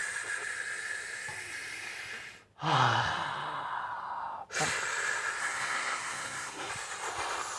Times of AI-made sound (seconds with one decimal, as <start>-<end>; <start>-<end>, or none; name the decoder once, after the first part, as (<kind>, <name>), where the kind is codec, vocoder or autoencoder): 5.4-6.7 (codec, SNAC)